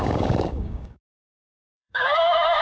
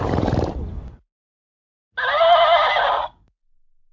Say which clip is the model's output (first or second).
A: first